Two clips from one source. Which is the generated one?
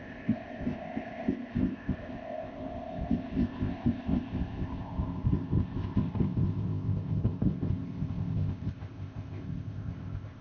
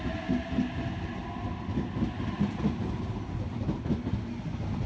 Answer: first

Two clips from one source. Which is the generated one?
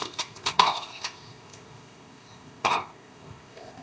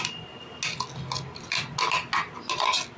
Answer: first